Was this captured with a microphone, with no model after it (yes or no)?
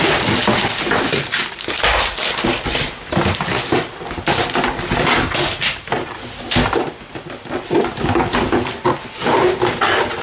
yes